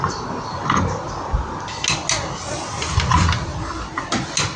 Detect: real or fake real